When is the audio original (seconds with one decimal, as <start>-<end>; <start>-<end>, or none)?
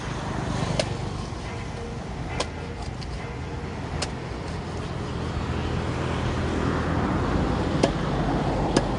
0.0-9.0